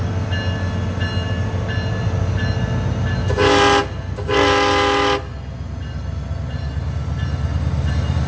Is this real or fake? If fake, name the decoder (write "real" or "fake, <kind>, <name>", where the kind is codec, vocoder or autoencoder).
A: real